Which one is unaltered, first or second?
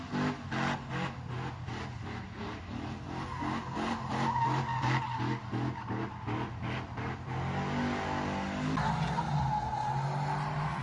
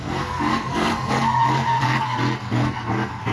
first